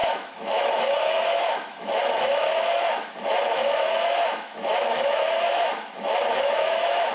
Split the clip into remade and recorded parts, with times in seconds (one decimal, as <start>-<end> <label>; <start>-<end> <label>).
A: 0.0-7.1 remade